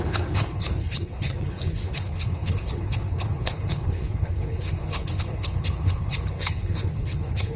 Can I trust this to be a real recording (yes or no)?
no